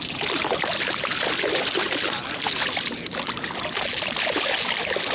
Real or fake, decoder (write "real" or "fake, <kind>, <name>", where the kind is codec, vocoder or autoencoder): fake, vocoder, BigVGAN v2